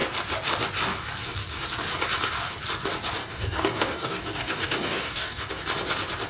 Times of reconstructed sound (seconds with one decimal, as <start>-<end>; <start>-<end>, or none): 3.2-5.5